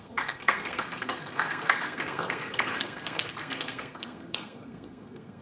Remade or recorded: remade